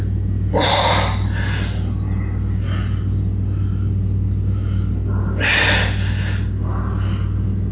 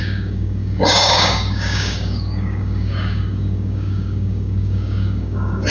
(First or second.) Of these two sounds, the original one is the first